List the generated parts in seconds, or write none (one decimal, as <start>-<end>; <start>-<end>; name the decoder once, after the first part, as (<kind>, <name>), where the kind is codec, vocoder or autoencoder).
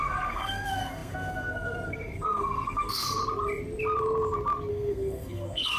0.0-3.2 (codec, SNAC); 4.7-5.8